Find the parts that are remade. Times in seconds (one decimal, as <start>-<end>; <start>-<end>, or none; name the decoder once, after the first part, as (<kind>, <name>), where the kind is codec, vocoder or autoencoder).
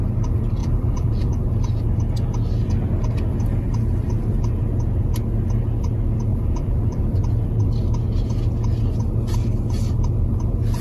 0.6-1.5 (vocoder, BigVGAN v2); 6.3-7.2